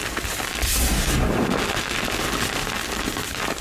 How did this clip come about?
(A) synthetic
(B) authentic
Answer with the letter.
B